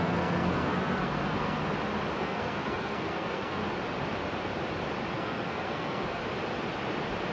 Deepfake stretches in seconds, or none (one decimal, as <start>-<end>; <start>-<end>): 0.0-1.6; 2.2-3.6; 5.1-6.2